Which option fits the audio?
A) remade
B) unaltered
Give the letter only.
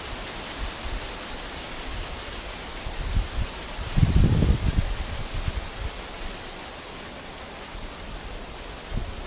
B